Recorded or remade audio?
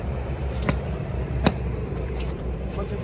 remade